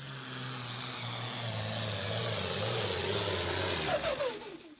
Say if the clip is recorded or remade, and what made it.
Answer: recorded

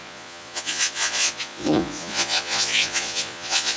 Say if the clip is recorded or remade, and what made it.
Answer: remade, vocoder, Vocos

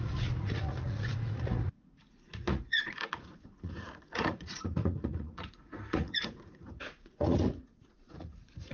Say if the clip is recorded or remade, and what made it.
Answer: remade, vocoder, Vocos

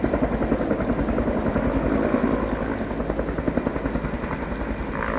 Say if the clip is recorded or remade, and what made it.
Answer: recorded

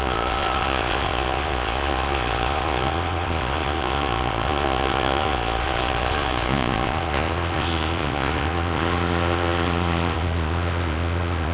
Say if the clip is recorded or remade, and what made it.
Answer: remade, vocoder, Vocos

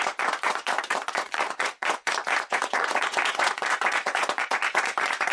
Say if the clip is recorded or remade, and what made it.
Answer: remade, vocoder, Vocos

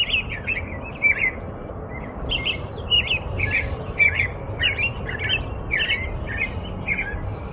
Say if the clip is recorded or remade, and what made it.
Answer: recorded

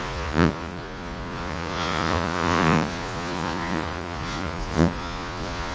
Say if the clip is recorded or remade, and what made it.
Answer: remade, vocoder, Vocos